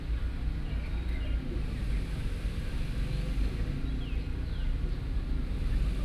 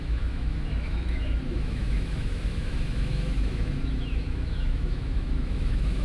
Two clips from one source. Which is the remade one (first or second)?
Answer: second